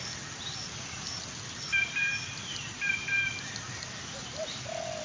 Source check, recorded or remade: recorded